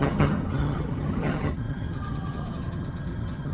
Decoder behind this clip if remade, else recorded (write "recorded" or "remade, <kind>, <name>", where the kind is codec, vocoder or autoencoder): remade, vocoder, HiFi-GAN